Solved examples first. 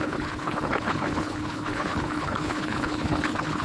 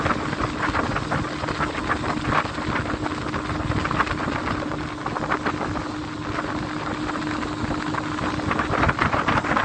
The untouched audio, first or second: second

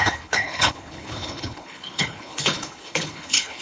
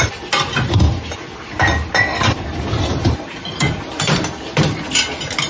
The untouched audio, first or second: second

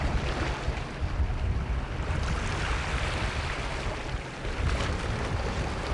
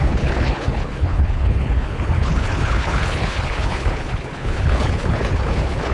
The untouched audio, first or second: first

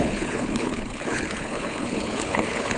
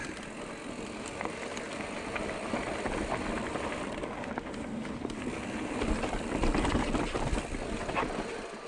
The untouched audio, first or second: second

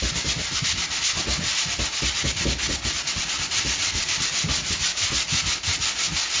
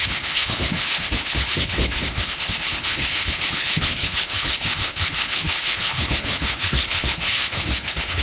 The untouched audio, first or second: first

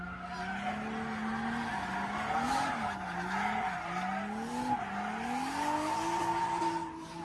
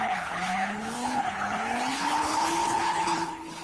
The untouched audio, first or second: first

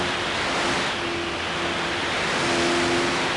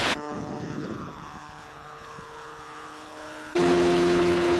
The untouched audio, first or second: first